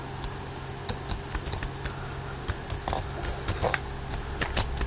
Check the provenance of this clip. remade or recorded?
recorded